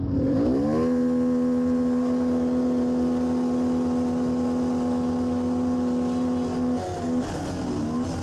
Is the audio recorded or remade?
recorded